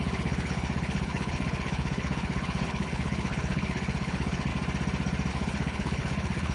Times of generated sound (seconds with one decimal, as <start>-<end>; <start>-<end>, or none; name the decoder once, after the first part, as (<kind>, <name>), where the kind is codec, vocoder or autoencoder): 0.0-4.5 (codec, HILCodec); 5.3-6.5